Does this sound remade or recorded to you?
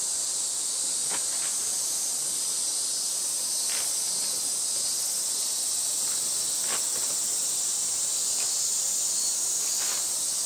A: recorded